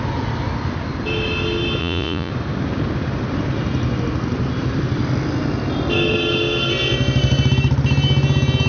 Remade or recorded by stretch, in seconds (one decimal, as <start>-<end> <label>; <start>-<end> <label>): 0.0-1.8 recorded; 1.8-2.3 remade; 2.3-8.7 recorded